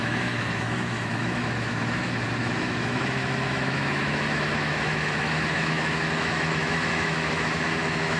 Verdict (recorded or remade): remade